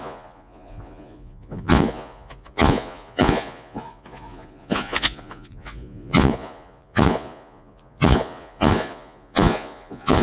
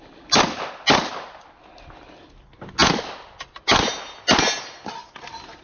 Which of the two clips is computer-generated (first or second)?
first